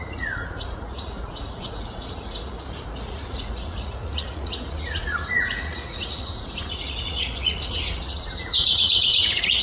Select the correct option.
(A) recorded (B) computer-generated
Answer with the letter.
B